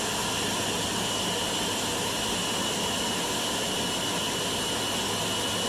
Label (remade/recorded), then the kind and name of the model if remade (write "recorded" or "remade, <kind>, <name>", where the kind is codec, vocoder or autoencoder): recorded